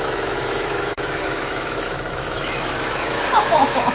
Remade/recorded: remade